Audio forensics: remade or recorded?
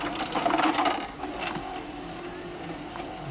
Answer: remade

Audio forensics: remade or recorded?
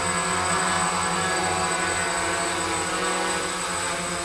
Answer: recorded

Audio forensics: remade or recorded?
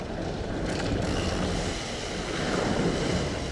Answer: remade